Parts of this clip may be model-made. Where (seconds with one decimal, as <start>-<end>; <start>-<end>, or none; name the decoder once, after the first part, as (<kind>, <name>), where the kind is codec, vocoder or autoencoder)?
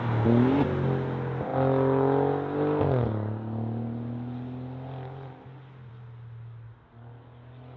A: none